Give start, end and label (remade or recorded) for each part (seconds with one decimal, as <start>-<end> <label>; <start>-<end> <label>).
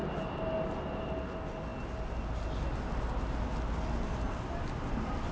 0.0-5.3 recorded